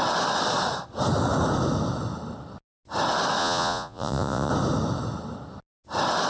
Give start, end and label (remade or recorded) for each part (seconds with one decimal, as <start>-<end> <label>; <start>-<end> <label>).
0.0-3.4 recorded; 3.4-4.5 remade; 4.5-6.3 recorded